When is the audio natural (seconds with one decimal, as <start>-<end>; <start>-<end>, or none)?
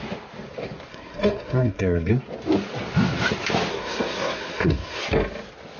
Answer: 0.0-0.9; 2.1-3.7; 5.0-5.8